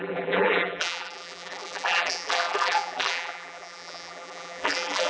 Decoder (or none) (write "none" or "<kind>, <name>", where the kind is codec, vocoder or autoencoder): vocoder, BigVGAN v2